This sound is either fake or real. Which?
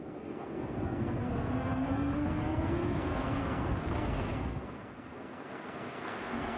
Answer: fake